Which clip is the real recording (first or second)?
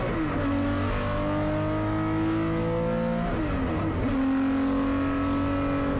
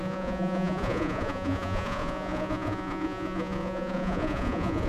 first